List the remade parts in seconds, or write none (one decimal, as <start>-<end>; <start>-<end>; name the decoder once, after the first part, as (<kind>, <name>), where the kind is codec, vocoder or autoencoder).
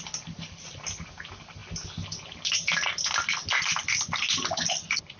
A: none